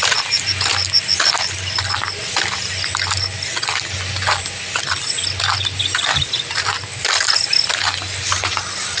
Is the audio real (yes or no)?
yes